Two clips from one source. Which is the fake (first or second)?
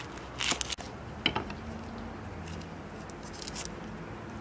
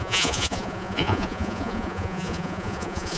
second